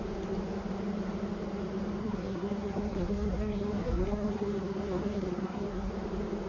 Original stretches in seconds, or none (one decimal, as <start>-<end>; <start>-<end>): 0.0-2.0; 5.9-6.5